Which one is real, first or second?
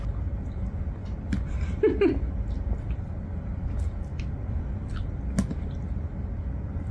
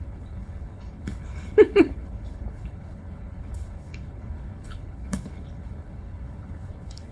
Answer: first